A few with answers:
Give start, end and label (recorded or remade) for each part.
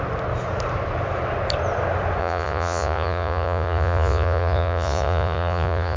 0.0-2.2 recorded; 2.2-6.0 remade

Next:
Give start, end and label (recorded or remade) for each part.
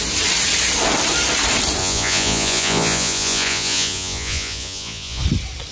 0.0-1.8 recorded; 1.8-5.2 remade; 5.2-5.7 recorded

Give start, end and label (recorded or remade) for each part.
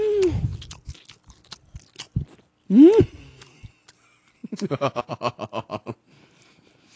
0.0-4.4 recorded; 4.4-5.0 remade; 5.0-7.0 recorded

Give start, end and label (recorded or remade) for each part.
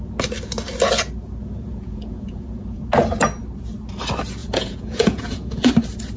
0.0-1.4 recorded; 1.4-2.8 remade; 2.8-4.4 recorded; 4.4-5.7 remade; 5.7-6.2 recorded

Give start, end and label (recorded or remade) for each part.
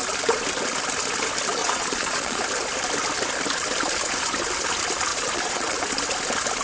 0.0-1.6 recorded; 1.6-2.4 remade; 2.4-5.1 recorded; 5.1-5.8 remade; 5.8-6.6 recorded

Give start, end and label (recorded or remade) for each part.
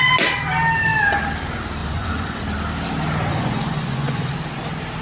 0.0-1.8 recorded; 1.8-2.4 remade; 2.4-3.3 recorded; 3.3-4.3 remade; 4.3-5.0 recorded